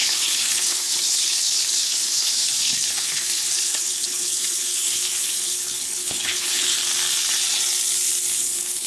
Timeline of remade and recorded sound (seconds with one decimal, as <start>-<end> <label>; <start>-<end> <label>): 0.0-6.8 remade; 6.8-8.3 recorded; 8.3-8.9 remade